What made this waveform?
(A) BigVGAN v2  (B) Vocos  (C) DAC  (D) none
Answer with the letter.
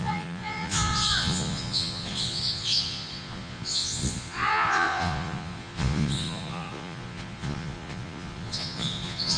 B